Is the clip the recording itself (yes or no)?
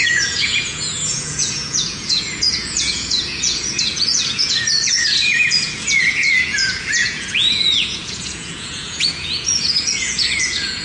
no